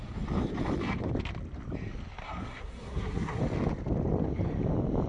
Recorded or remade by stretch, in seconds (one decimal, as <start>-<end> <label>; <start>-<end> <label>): 0.0-2.2 recorded; 2.2-3.4 remade; 3.4-5.1 recorded